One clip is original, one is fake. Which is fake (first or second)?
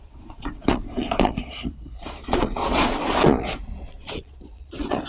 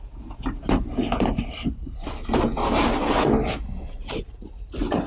first